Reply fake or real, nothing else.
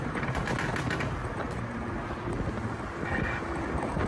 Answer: real